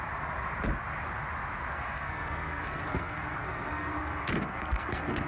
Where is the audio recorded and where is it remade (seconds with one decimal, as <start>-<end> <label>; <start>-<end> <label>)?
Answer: 0.0-1.7 recorded; 1.7-5.3 remade